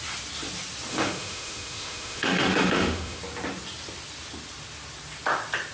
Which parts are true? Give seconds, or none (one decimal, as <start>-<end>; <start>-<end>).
0.0-0.9; 3.2-5.7